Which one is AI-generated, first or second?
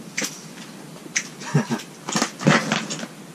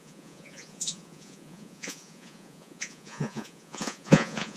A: second